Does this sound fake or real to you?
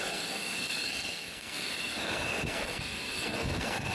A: fake